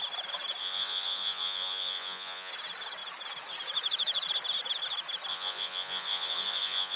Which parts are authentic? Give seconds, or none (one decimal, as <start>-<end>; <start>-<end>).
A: 0.0-0.6; 2.5-5.3